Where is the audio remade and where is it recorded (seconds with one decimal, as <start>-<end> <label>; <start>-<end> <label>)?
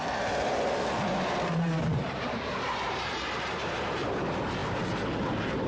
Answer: 0.0-5.7 remade